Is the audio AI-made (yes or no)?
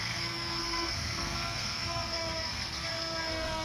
yes